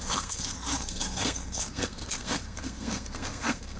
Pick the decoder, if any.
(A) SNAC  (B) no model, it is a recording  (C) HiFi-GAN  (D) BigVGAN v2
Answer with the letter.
A